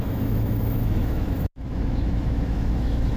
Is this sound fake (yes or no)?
yes